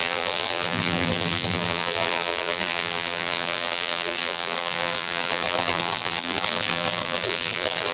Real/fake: fake